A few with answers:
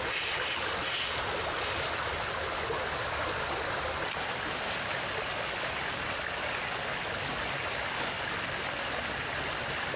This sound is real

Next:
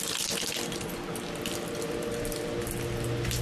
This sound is real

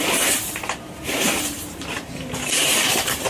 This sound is fake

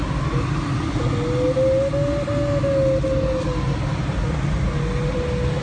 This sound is real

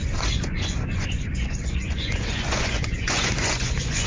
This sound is fake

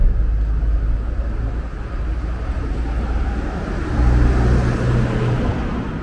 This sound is real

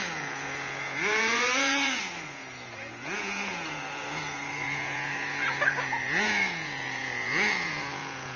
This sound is fake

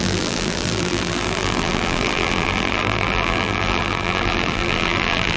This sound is fake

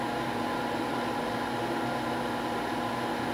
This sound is real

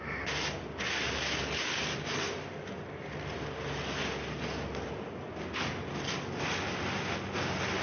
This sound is real